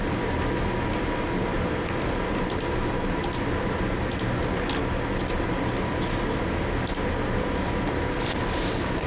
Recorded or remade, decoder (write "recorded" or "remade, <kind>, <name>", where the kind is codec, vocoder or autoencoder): recorded